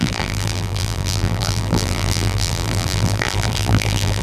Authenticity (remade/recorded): remade